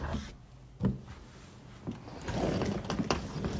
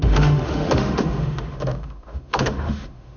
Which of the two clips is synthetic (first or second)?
second